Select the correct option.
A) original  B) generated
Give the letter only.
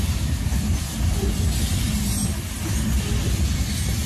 A